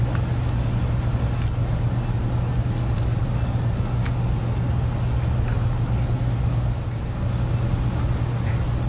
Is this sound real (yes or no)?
yes